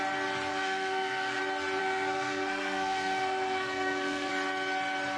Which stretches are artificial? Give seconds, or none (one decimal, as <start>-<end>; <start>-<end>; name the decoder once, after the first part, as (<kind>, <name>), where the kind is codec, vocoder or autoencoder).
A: 0.5-1.4 (codec, SNAC); 1.8-4.3